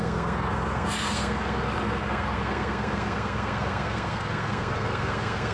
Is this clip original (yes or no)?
no